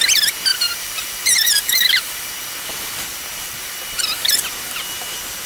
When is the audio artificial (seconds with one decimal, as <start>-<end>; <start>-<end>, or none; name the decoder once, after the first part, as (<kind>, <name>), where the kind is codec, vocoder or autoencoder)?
0.5-2.3 (vocoder, BigVGAN v2); 3.1-4.3